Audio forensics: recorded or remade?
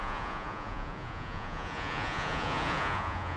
remade